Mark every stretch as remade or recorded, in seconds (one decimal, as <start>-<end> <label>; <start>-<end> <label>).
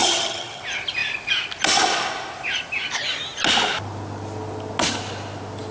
0.0-0.6 remade; 0.6-5.7 recorded